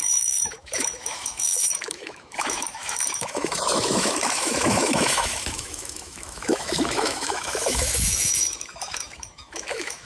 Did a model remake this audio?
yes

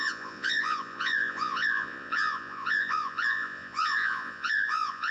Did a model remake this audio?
yes